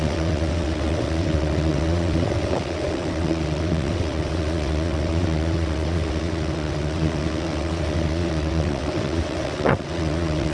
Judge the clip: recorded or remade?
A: remade